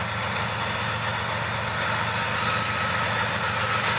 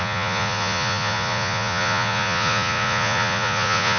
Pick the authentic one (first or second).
first